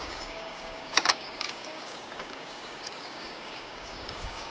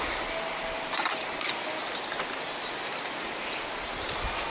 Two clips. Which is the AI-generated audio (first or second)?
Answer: first